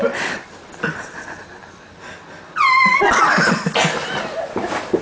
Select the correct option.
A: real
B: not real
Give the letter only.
A